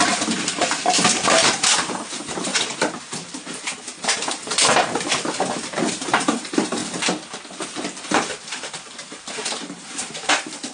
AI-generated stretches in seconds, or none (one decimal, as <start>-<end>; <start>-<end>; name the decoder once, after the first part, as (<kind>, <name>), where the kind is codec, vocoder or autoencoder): 0.0-6.8 (vocoder, BigVGAN v2); 8.0-10.7